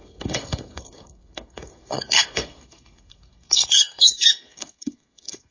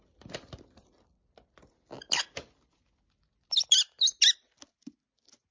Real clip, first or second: second